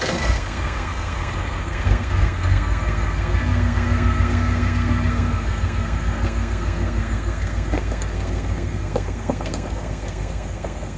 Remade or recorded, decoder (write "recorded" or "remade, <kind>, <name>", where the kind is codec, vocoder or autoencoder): remade, codec, SNAC